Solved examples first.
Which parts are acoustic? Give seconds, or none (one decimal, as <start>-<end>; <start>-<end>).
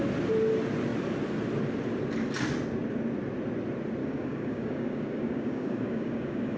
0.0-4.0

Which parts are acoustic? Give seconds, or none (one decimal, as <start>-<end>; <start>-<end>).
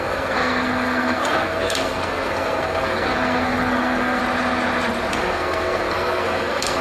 4.2-5.1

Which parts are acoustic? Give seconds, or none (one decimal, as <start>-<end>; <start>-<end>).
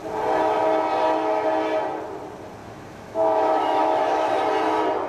0.0-2.6; 4.4-5.1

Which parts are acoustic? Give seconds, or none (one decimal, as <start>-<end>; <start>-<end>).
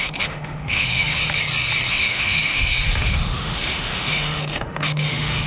1.2-1.9